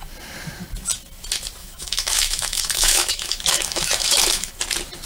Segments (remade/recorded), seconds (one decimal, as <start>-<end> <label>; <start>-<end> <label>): 0.0-1.6 recorded; 1.6-4.5 remade; 4.5-5.1 recorded

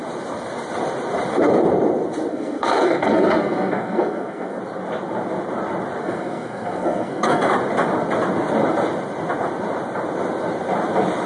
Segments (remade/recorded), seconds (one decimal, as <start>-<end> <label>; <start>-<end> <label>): 0.0-2.3 recorded; 2.3-4.6 remade; 4.6-6.0 recorded; 6.0-7.5 remade; 7.5-11.3 recorded

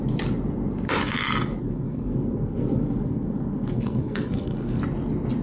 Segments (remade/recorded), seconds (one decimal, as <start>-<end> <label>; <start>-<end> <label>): 0.0-1.6 recorded; 1.6-4.8 remade; 4.8-5.4 recorded

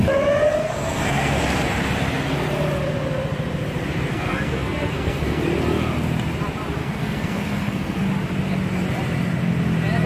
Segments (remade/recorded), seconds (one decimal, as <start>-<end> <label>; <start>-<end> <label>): 0.0-0.6 recorded; 0.6-1.4 remade; 1.4-4.1 recorded; 4.1-5.4 remade; 5.4-6.8 recorded; 6.8-8.0 remade; 8.0-10.1 recorded

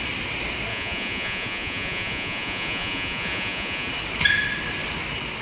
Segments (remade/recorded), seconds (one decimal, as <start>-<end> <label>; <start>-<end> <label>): 0.0-0.7 recorded; 0.7-3.9 remade; 3.9-5.4 recorded

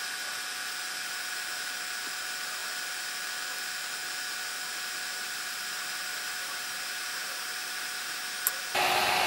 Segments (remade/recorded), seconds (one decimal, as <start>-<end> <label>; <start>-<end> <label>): 0.0-5.2 recorded; 5.2-8.2 remade; 8.2-9.3 recorded

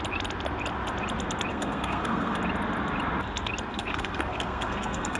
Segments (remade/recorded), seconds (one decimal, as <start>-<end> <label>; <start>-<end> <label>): 0.0-1.5 recorded; 1.5-2.4 remade; 2.4-3.7 recorded; 3.7-5.2 remade